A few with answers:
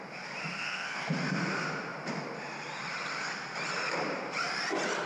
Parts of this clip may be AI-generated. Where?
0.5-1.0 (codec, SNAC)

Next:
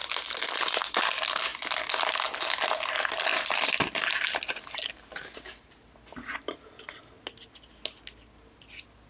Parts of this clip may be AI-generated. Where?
3.3-4.9 (vocoder, BigVGAN v2)

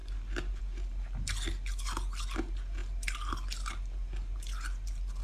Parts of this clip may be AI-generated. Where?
none